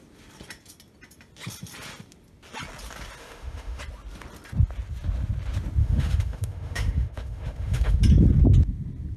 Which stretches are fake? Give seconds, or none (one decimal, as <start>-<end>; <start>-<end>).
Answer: 3.2-3.8; 5.8-8.0

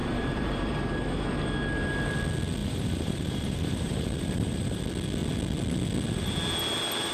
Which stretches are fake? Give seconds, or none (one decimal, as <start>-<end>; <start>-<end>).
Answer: 0.0-0.6; 2.6-4.8

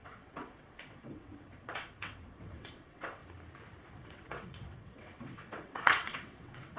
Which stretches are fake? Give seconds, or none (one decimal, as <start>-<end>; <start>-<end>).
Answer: 0.0-3.2; 3.9-6.8

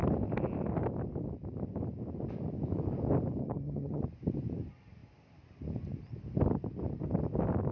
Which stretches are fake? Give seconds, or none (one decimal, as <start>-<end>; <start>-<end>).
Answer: 3.4-4.0

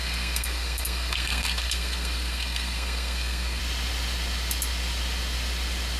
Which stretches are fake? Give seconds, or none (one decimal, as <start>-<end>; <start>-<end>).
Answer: 0.0-3.6